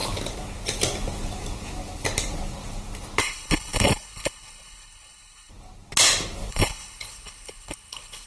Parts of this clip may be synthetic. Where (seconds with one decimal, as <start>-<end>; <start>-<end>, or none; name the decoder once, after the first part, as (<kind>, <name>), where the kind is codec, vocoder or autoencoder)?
3.2-5.5 (codec, HILCodec); 6.5-8.3